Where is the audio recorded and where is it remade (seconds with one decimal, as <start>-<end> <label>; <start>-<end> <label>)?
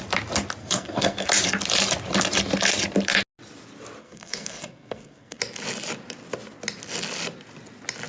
0.0-0.6 recorded; 0.6-1.3 remade; 1.3-4.0 recorded; 4.0-5.4 remade; 5.4-8.1 recorded